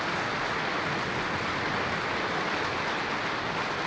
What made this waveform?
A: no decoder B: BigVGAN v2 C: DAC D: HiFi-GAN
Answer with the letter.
A